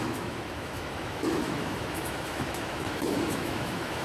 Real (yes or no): no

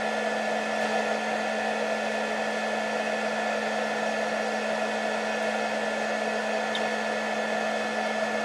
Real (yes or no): yes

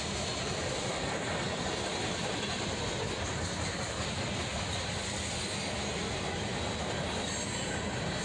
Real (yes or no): yes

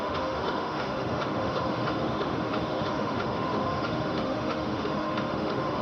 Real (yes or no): no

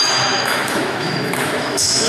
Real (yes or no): no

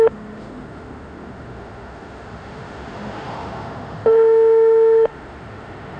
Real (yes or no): no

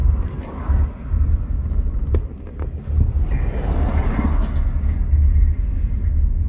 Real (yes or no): yes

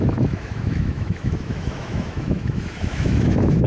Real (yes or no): no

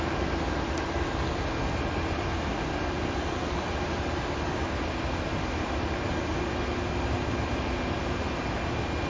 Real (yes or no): yes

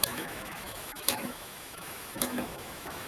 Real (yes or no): no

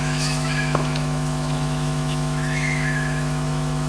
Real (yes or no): no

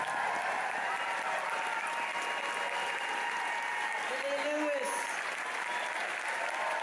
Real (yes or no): yes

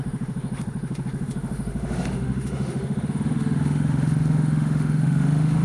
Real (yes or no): no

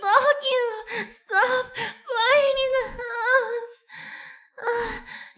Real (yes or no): no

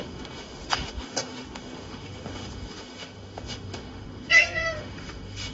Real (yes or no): no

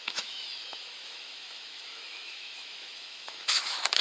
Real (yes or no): no